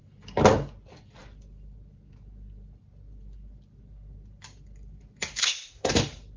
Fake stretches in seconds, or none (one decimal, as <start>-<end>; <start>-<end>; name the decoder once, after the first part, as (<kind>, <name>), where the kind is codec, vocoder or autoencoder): 5.4-5.9 (codec, ZipCodec)